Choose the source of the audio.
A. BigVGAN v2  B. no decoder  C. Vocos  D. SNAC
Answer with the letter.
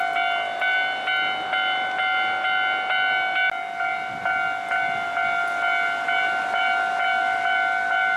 B